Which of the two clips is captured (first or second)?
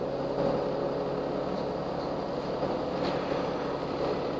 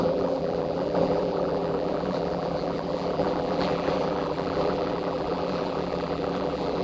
first